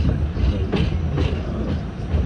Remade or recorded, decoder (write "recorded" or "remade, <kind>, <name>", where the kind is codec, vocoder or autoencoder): recorded